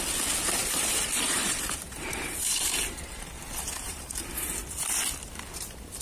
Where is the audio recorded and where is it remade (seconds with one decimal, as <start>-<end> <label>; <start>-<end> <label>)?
0.0-0.6 recorded; 0.6-4.2 remade; 4.2-6.0 recorded